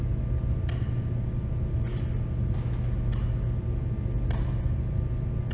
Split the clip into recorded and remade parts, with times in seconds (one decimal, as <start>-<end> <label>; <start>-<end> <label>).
0.0-5.5 recorded